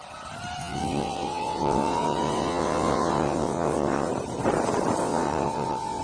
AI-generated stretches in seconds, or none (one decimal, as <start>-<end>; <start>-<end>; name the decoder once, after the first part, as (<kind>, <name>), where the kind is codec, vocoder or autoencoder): 0.6-4.1 (vocoder, WaveNeXt); 5.0-6.0